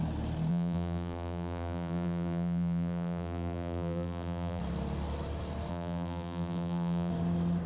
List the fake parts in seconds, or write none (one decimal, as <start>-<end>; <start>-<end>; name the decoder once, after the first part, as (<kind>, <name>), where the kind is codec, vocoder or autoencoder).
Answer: 0.5-4.6 (vocoder, BigVGAN v2); 5.7-7.1